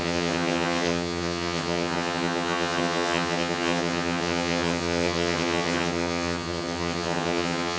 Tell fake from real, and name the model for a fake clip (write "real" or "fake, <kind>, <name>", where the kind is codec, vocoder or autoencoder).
fake, vocoder, HiFi-GAN